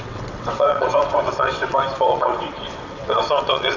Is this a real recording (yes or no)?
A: no